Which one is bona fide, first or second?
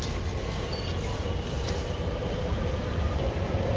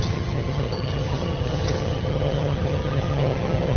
first